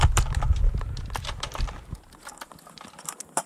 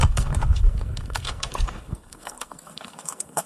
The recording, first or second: first